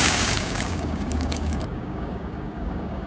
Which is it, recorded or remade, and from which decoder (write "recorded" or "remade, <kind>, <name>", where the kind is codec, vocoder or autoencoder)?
remade, codec, DAC